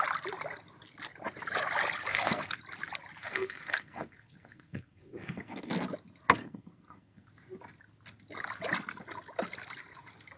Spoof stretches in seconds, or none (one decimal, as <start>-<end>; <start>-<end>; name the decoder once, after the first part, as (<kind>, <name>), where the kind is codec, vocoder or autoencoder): 2.1-2.6 (codec, SNAC); 3.2-5.7; 6.4-7.3